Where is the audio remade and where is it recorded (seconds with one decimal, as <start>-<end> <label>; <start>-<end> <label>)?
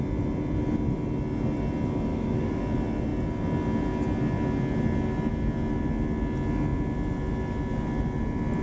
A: 0.0-2.1 recorded; 2.1-2.6 remade; 2.6-8.6 recorded